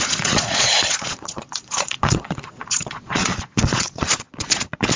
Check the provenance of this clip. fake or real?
fake